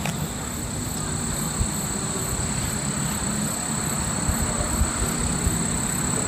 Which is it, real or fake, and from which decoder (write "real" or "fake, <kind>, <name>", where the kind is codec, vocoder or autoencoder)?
real